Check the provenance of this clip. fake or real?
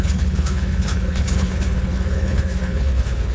fake